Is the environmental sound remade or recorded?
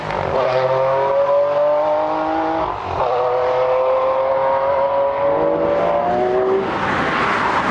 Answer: recorded